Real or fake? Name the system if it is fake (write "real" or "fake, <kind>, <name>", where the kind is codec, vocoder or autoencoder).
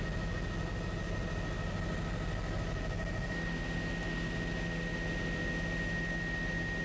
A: real